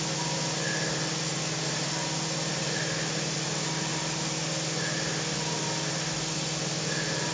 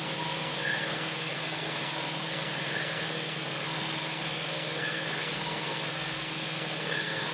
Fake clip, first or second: second